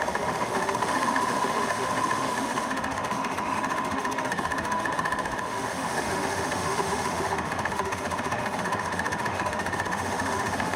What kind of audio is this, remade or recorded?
remade